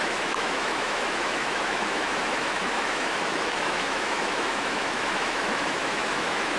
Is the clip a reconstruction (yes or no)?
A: yes